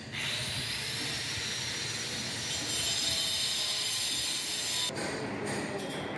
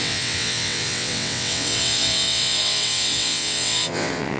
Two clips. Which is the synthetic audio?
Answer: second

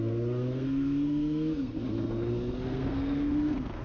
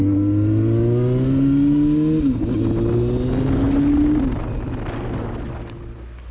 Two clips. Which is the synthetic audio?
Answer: first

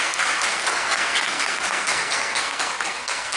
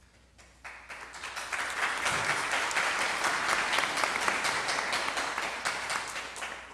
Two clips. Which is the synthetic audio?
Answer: first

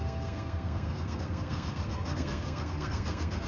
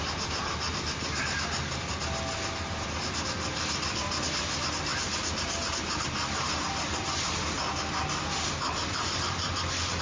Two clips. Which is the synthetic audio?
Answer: first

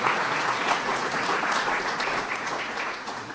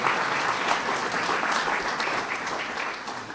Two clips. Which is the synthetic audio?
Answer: first